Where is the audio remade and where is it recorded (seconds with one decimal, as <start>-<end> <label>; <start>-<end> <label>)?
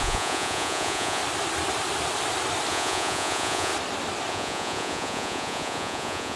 0.0-1.2 remade; 1.2-2.7 recorded; 2.7-3.7 remade; 3.7-4.3 recorded; 4.3-6.4 remade